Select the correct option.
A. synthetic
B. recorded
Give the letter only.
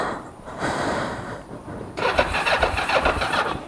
A